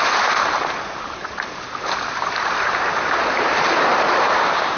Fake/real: fake